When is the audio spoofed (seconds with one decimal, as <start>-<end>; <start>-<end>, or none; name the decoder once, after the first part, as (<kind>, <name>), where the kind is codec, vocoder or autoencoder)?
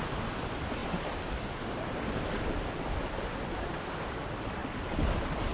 4.6-5.5 (vocoder, BigVGAN v2)